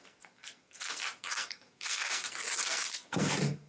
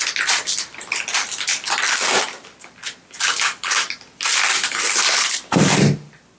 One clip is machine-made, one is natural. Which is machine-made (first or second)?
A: first